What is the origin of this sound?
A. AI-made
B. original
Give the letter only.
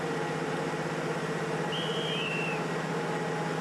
B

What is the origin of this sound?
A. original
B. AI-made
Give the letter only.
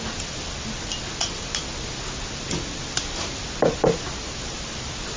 A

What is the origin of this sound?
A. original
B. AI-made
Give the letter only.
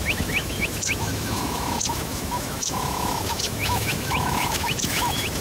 B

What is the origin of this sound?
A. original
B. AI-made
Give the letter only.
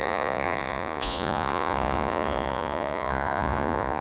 B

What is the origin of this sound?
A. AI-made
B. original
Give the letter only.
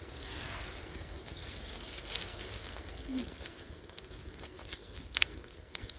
A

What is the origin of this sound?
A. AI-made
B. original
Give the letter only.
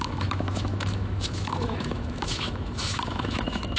A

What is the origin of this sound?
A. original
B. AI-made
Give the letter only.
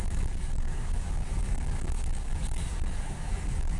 B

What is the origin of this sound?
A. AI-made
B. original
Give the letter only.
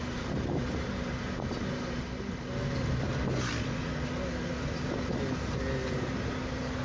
B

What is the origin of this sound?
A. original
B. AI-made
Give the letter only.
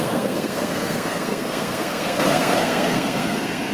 B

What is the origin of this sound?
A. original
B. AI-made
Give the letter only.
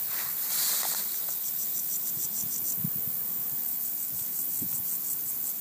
A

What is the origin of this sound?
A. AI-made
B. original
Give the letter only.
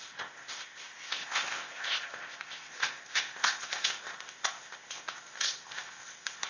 A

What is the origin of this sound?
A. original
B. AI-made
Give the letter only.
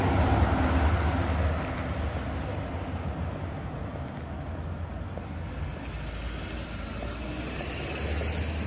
A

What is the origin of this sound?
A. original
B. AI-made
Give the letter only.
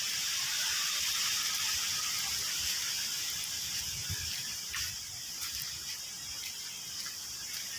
A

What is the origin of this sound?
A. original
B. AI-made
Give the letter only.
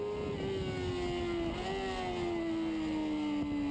A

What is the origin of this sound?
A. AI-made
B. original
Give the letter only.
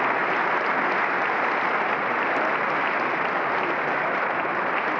B